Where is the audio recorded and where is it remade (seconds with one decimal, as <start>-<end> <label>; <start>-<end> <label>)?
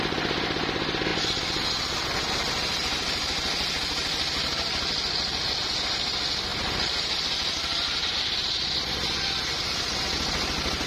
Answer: 0.0-1.1 recorded; 1.1-1.7 remade; 1.7-6.5 recorded; 6.5-10.0 remade; 10.0-10.9 recorded